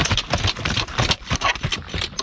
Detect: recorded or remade recorded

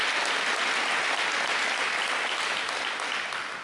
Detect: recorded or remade recorded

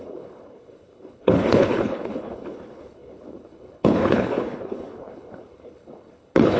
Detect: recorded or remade remade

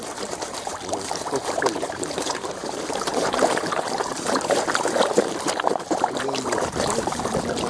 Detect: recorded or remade remade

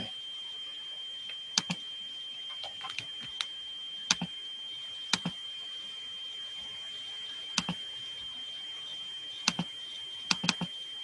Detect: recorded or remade recorded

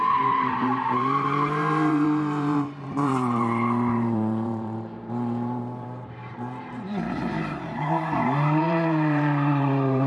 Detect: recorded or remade remade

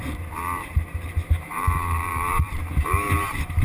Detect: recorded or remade remade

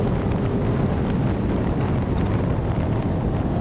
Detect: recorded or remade recorded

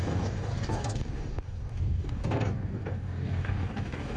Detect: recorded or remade remade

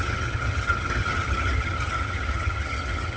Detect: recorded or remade remade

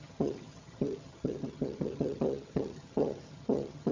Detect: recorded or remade remade